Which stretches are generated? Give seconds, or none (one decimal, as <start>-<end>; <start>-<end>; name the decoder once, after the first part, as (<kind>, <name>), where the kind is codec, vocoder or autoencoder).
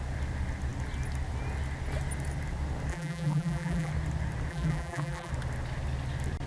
2.9-3.9 (vocoder, BigVGAN v2); 4.5-5.3